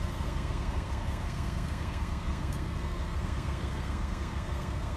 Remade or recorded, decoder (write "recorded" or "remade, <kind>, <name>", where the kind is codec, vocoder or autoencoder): remade, codec, SNAC